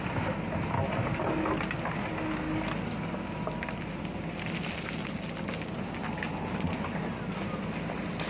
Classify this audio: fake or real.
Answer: real